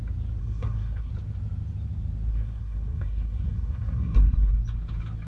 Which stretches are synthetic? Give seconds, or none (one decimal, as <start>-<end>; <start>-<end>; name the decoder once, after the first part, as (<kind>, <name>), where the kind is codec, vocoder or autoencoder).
0.4-1.1 (codec, SNAC); 2.3-4.5